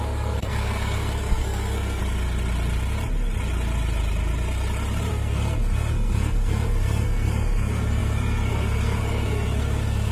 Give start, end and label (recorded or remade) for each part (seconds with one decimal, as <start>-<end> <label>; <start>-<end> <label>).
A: 0.0-2.0 remade; 2.0-5.1 recorded; 5.1-10.1 remade